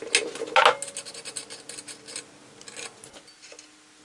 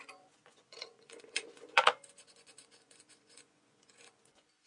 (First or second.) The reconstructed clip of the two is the second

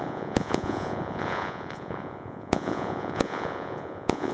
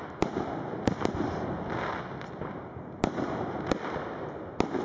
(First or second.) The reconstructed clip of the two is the first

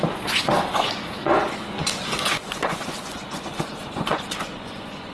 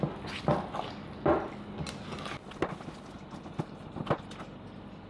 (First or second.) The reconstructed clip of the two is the first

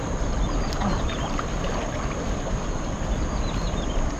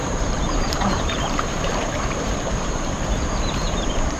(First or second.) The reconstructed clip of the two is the second